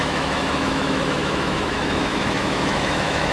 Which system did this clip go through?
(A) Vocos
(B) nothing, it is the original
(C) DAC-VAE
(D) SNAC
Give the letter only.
C